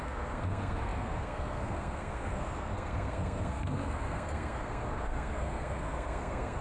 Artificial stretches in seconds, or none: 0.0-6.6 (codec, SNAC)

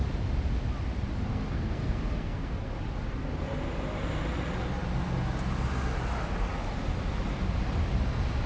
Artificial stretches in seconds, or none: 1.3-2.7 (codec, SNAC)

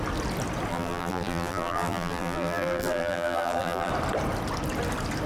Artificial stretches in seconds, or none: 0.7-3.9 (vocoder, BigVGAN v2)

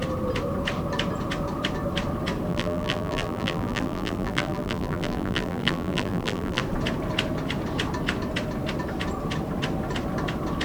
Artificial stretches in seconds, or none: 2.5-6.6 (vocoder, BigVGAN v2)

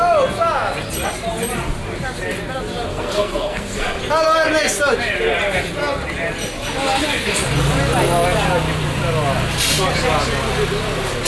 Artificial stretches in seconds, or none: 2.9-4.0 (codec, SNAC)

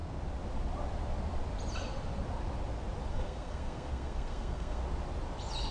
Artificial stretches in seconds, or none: 3.1-4.8 (codec, SNAC)